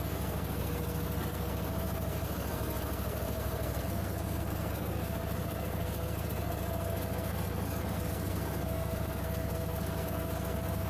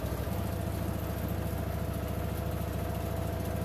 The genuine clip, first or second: second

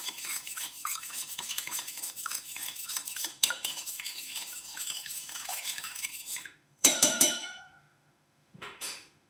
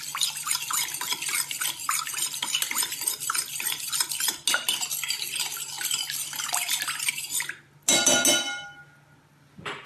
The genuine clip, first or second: second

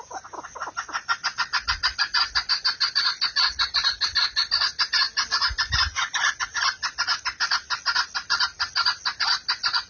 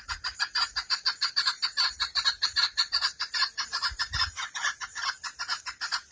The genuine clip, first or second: first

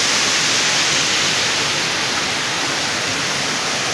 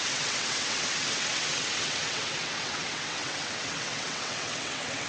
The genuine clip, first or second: first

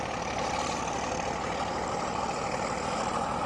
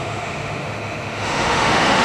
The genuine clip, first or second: first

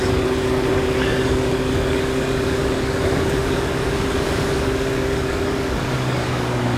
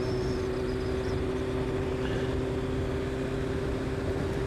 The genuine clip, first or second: second